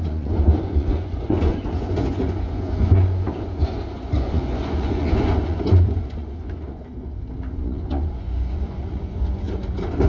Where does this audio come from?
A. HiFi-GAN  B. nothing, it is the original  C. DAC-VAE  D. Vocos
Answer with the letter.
D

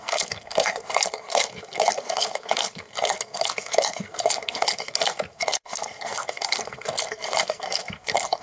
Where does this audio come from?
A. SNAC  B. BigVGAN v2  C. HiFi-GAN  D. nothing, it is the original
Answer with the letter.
A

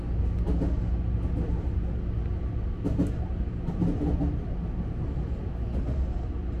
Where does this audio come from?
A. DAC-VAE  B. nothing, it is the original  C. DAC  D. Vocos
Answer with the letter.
B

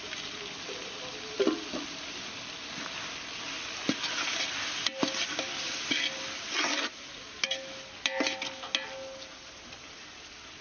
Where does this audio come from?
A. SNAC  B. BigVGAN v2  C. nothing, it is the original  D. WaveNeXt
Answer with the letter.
C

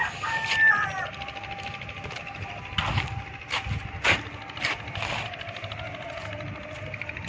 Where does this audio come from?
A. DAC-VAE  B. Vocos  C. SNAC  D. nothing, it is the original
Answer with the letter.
D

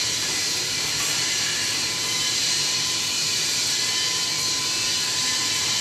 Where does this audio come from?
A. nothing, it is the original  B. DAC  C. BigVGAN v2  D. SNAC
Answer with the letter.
C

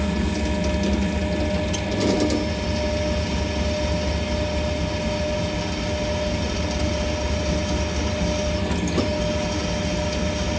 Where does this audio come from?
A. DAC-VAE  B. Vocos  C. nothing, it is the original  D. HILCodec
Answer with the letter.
C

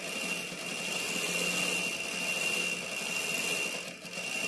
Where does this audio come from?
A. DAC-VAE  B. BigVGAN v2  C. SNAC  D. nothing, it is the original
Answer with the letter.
D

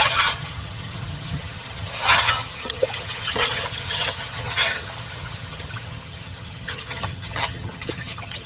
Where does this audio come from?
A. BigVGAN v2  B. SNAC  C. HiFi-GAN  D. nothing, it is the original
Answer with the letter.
C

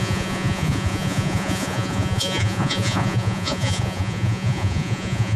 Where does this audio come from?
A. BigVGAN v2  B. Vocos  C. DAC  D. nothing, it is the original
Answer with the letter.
B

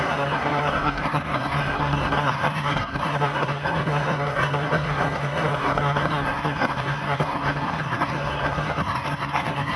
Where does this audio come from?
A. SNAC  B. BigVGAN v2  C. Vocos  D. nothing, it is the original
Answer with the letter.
A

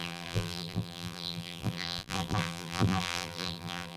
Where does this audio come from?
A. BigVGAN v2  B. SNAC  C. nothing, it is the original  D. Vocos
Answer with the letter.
A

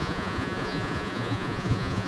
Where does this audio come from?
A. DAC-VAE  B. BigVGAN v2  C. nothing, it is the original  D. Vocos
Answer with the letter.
D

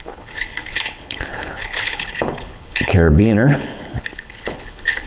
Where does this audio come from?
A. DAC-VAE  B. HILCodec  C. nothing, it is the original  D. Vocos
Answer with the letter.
B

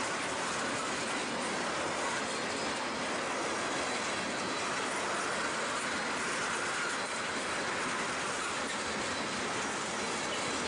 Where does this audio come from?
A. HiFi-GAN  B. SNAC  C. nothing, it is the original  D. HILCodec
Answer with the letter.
C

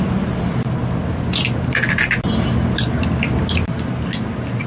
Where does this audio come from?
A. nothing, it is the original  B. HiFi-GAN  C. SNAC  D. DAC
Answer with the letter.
A